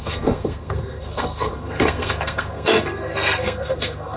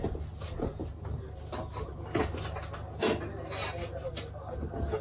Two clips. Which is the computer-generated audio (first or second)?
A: first